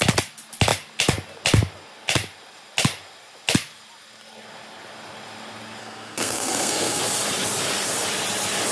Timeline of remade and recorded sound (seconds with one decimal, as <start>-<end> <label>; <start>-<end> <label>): 0.0-5.8 recorded; 5.8-7.0 remade; 7.0-8.7 recorded